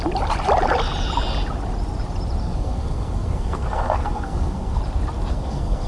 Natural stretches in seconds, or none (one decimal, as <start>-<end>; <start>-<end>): 0.0-2.4; 4.8-5.3